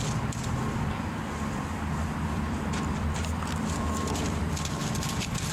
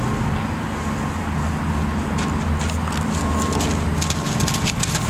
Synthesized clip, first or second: first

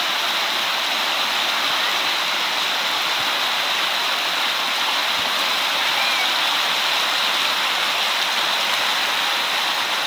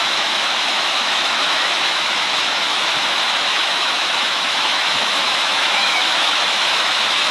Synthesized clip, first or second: second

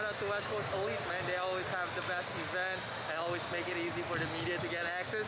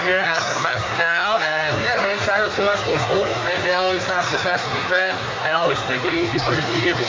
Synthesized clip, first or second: second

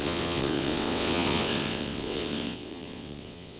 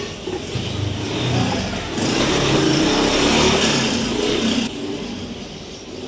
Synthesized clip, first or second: first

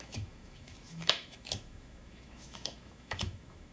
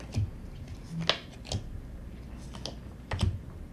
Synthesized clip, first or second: first